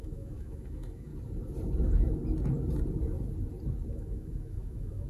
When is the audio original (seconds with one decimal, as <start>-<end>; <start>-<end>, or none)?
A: 1.1-3.9